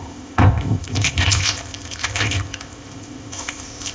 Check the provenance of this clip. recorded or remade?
remade